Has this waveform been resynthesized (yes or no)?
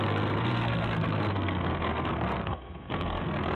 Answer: yes